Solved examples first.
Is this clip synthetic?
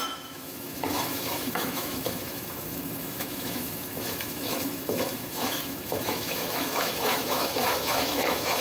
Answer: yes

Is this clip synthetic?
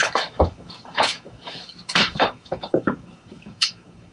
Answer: yes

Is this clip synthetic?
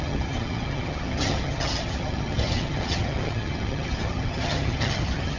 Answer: yes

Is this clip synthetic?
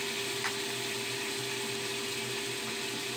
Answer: no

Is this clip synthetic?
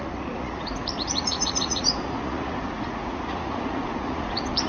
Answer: yes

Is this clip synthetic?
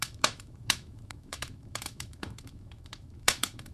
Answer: yes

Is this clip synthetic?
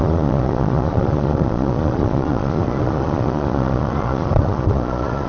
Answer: yes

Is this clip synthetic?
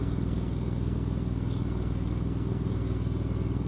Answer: yes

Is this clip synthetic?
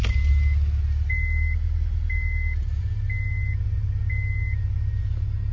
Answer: no